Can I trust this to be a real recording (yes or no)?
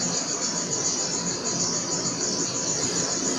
yes